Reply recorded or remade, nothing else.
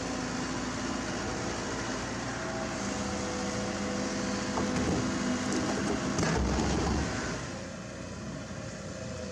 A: recorded